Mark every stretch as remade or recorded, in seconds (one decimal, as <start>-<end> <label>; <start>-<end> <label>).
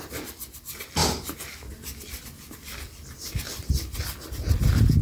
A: 0.0-5.0 recorded